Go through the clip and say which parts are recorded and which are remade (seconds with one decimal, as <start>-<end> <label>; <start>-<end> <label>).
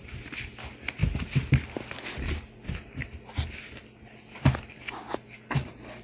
0.0-6.0 recorded